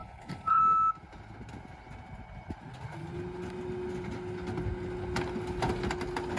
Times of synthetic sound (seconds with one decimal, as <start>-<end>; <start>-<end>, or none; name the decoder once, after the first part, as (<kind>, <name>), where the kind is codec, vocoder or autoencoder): 0.0-0.6 (codec, HILCodec)